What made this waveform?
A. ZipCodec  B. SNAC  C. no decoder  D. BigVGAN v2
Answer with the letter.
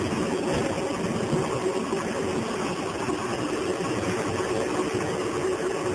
C